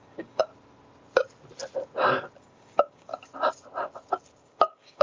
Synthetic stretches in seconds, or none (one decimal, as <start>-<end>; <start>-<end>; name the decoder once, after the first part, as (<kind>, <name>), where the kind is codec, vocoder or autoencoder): 0.0-0.5 (codec, DAC); 2.4-3.1; 4.4-5.0